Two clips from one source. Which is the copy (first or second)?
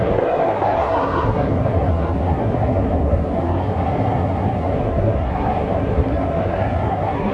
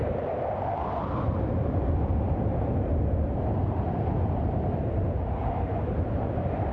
first